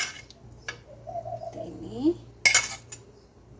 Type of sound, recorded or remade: recorded